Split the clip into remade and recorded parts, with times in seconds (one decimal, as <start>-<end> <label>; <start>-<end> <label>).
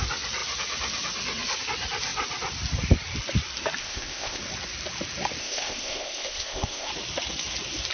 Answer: 0.0-3.8 recorded; 3.8-4.4 remade; 4.4-5.4 recorded; 5.4-6.9 remade; 6.9-7.9 recorded